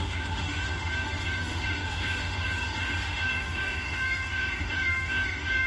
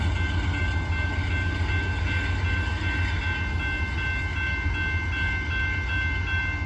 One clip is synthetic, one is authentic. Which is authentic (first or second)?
second